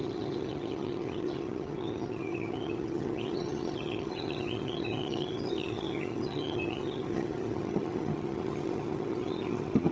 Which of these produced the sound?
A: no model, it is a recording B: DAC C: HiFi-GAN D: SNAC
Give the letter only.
C